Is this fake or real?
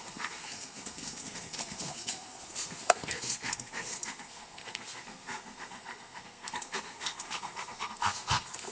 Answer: fake